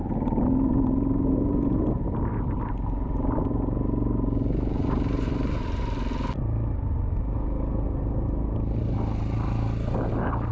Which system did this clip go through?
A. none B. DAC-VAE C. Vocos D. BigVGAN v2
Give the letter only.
A